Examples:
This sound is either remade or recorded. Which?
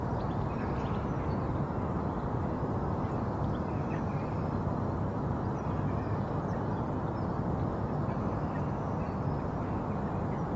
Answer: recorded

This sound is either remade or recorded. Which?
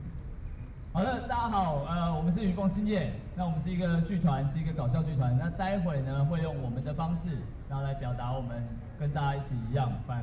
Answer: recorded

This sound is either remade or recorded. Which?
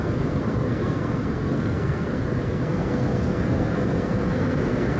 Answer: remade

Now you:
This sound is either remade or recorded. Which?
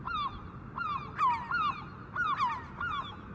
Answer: recorded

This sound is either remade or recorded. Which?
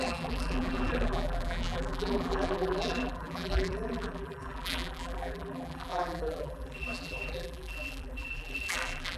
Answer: remade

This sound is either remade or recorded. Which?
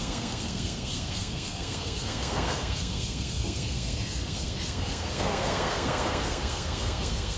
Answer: remade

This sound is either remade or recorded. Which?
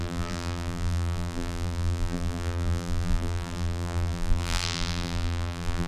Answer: remade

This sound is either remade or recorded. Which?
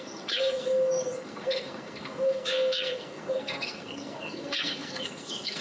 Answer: remade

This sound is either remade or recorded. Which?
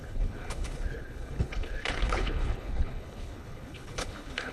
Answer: remade